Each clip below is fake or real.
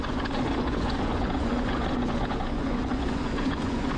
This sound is fake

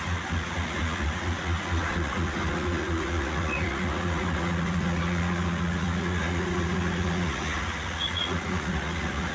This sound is fake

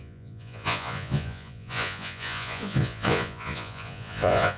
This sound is fake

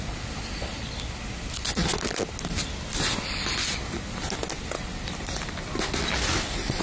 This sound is real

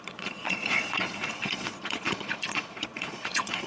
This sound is fake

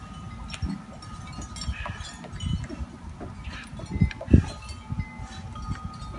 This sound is real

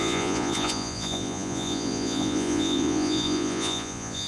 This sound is fake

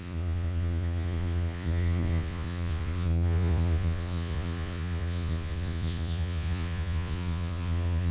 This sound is fake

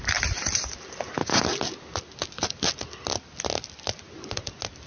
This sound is real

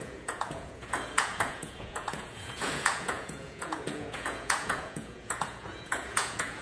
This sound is fake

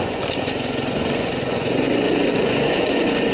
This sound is fake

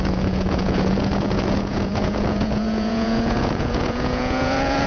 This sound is fake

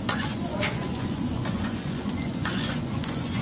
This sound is fake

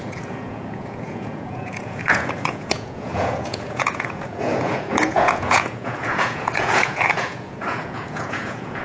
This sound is fake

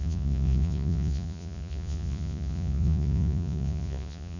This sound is fake